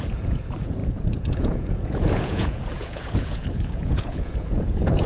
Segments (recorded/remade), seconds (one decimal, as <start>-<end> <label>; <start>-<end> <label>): 0.0-5.1 remade